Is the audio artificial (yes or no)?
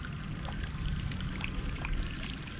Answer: no